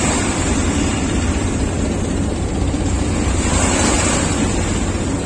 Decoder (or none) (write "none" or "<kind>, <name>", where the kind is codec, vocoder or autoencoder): vocoder, BigVGAN v2